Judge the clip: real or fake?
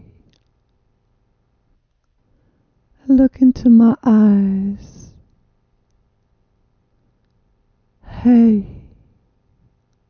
real